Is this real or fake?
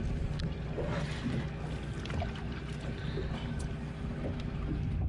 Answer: real